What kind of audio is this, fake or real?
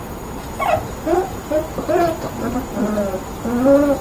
fake